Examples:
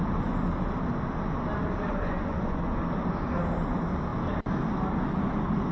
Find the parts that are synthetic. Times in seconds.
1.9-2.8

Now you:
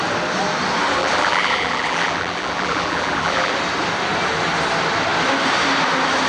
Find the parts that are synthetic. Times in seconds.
1.0-3.5

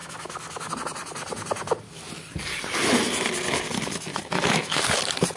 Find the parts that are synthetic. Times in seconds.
0.0-0.7; 4.1-4.8

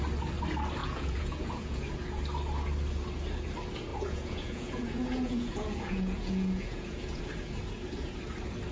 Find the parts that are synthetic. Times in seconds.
0.8-2.2; 3.9-7.2

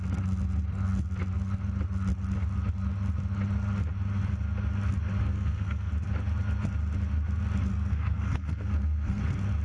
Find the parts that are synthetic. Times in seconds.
5.2-5.9; 7.7-9.2

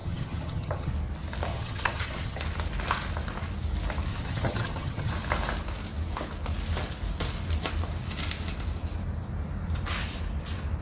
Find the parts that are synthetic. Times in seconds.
0.0-0.9; 1.5-2.4; 4.1-5.1

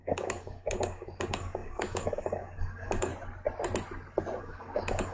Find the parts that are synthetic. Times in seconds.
0.0-3.1; 4.4-5.1

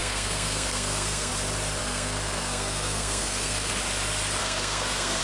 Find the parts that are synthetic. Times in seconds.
0.0-1.3; 1.8-3.7; 4.4-5.2